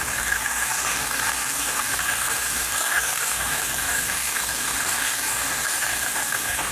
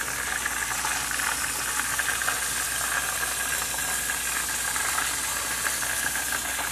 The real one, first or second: second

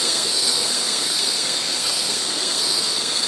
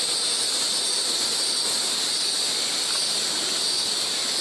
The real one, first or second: second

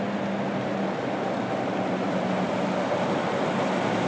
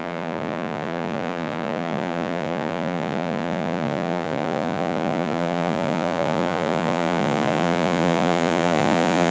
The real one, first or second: first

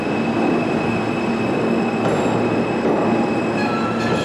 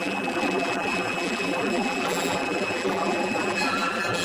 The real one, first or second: first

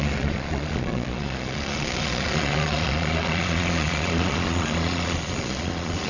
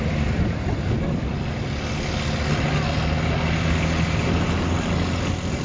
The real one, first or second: second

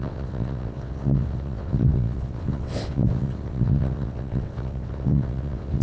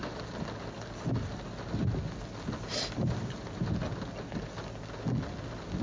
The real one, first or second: second